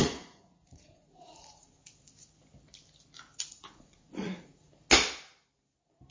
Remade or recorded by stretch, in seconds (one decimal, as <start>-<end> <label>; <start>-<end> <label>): 0.0-1.8 remade; 1.8-3.5 recorded; 3.5-4.7 remade; 4.7-6.1 recorded

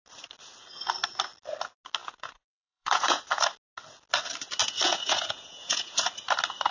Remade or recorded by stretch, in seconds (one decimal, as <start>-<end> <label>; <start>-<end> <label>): 0.0-2.0 recorded; 2.0-3.2 remade; 3.2-4.6 recorded; 4.6-6.0 remade; 6.0-6.7 recorded

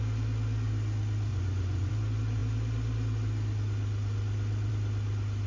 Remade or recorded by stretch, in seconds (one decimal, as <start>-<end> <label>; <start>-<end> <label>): 0.0-1.3 recorded; 1.3-1.9 remade; 1.9-5.5 recorded